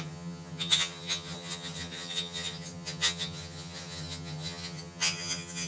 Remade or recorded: remade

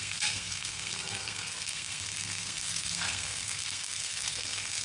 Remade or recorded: remade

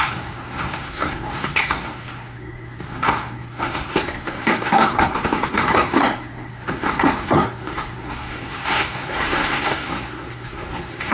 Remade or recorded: remade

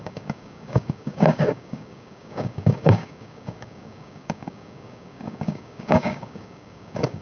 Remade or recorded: remade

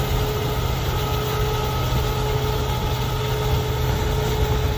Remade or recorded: recorded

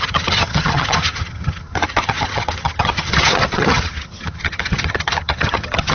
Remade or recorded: remade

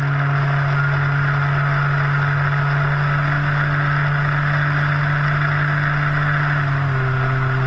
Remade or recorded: recorded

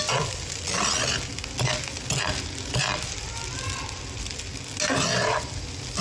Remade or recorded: recorded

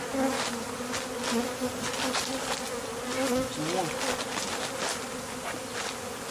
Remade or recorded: recorded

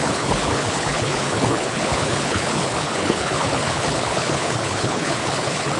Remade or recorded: remade